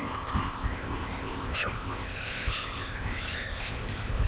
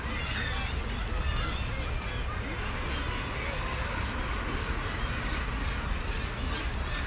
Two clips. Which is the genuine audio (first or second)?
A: second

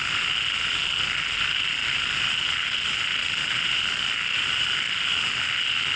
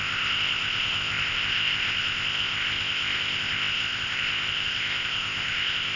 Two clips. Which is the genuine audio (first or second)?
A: first